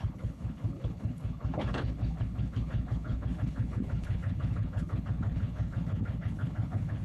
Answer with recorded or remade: remade